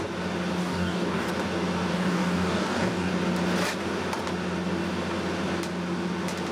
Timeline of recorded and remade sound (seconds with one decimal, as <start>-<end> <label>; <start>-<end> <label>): 0.0-0.6 recorded; 0.6-1.3 remade; 1.3-1.9 recorded; 1.9-3.1 remade; 3.1-6.5 recorded